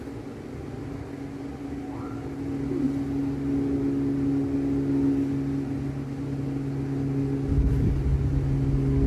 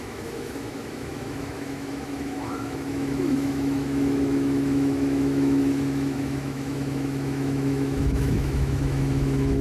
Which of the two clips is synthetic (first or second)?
second